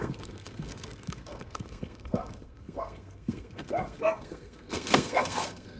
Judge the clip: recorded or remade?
remade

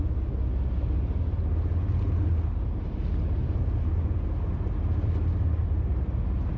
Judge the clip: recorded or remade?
recorded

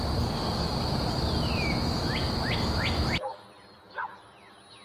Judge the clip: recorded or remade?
remade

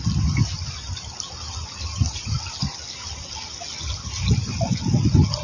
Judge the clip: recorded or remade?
recorded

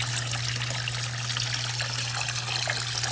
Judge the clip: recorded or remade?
recorded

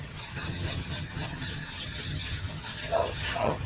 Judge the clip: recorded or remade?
remade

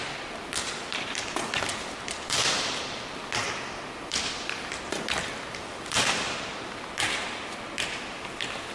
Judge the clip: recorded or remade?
remade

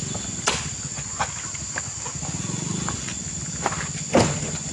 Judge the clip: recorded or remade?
recorded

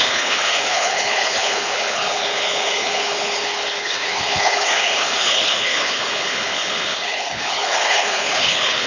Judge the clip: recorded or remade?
remade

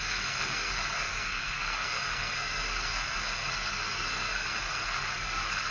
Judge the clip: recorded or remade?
remade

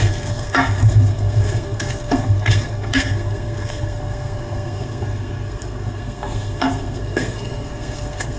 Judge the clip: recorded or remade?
remade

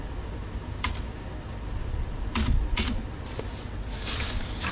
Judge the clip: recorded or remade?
recorded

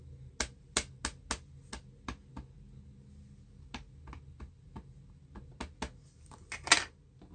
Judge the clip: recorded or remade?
recorded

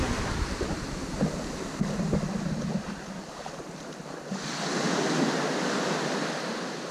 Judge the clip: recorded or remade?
recorded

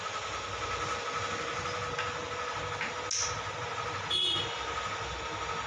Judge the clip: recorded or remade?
recorded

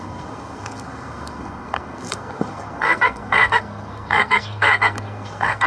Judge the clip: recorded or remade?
remade